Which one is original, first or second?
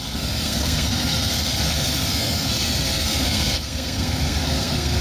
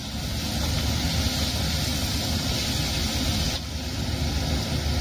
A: second